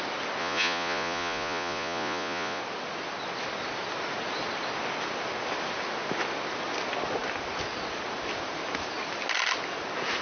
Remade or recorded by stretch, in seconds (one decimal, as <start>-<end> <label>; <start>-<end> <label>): 0.0-0.4 recorded; 0.4-2.6 remade; 2.6-10.2 recorded